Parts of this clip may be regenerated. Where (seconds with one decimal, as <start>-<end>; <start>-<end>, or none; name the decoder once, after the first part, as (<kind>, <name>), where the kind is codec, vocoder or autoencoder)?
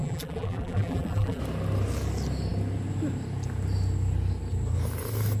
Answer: 0.0-1.4 (vocoder, BigVGAN v2)